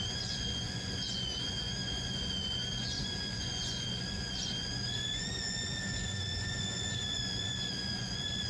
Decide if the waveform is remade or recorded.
remade